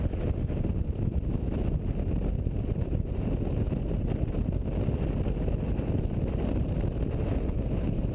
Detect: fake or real real